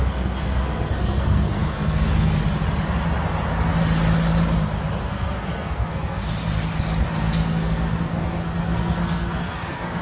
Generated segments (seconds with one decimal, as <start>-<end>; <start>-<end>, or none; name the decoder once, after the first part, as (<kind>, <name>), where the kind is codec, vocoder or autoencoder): 0.0-2.4 (codec, SNAC); 5.0-6.2; 7.1-10.0